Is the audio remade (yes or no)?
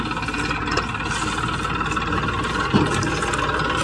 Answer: no